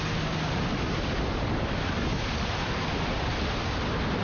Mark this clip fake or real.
real